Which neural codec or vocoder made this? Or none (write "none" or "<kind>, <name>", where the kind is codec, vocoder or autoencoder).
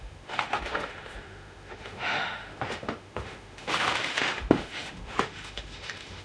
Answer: autoencoder, DAC-VAE